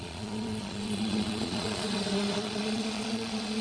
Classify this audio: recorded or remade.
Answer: remade